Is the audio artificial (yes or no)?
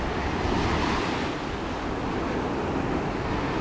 no